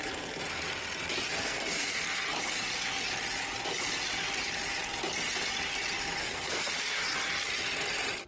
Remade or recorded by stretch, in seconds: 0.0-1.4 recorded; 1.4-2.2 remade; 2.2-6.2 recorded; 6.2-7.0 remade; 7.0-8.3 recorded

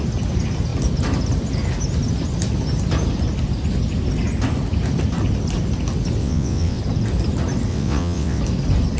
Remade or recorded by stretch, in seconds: 0.0-6.2 recorded; 6.2-6.8 remade; 6.8-7.7 recorded; 7.7-8.4 remade; 8.4-9.0 recorded

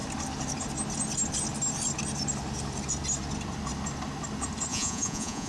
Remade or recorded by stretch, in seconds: 0.0-4.7 recorded; 4.7-5.5 remade

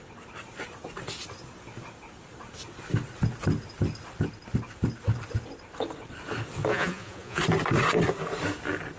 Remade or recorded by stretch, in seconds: 0.0-6.7 recorded; 6.7-7.4 remade; 7.4-9.0 recorded

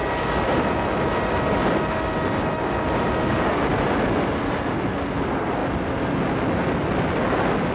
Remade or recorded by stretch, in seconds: 0.0-7.7 recorded

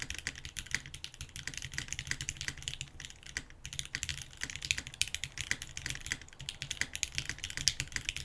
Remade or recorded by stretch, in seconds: 0.0-8.2 recorded

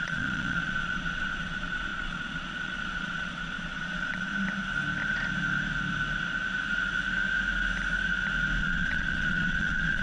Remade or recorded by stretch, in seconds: 0.0-4.3 remade; 4.3-8.6 recorded; 8.6-10.0 remade

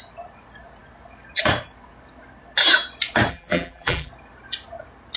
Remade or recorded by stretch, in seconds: 0.0-3.3 recorded; 3.3-4.1 remade; 4.1-5.2 recorded